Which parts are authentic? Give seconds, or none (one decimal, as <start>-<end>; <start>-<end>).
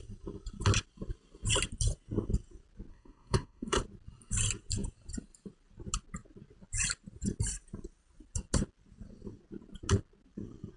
0.0-2.9; 3.8-10.8